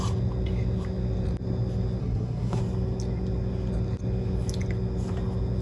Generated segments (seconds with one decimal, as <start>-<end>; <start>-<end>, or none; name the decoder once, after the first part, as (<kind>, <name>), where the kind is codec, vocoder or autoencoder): 2.0-2.6 (codec, SNAC)